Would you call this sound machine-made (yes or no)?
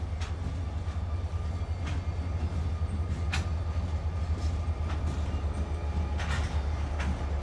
no